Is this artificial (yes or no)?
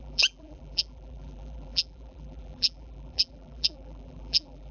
yes